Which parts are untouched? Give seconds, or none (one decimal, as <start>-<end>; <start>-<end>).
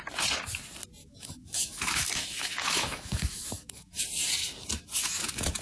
0.0-1.0; 4.0-4.4